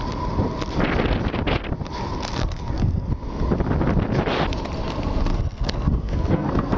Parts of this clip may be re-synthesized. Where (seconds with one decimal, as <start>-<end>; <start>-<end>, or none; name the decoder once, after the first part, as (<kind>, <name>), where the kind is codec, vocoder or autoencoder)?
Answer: 2.4-3.1 (codec, SNAC); 5.3-6.8